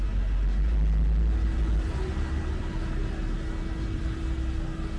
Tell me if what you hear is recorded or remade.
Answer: recorded